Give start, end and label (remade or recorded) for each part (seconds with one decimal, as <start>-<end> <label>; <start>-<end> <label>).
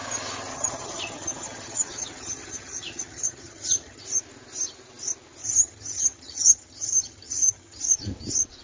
0.0-0.5 recorded; 0.5-4.0 remade; 4.0-5.4 recorded; 5.4-7.8 remade; 7.8-8.6 recorded